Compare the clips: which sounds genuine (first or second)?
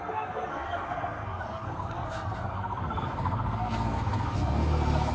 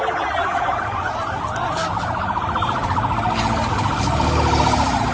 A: second